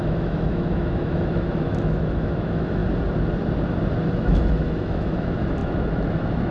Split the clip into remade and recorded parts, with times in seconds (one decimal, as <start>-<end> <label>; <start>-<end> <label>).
0.0-2.8 remade; 2.8-4.1 recorded; 4.1-6.5 remade